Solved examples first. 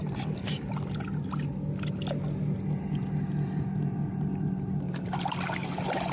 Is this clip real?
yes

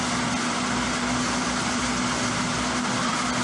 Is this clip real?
yes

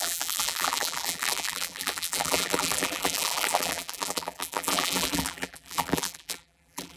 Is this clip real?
no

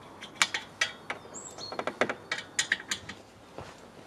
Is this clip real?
yes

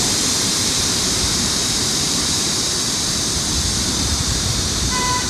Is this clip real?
no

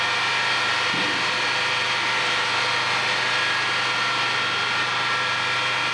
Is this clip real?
yes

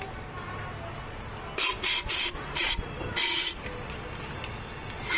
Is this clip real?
yes